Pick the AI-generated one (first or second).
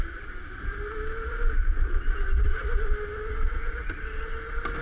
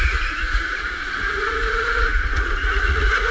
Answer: second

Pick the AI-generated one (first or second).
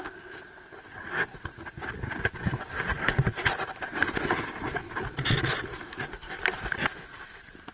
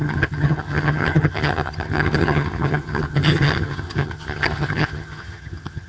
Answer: second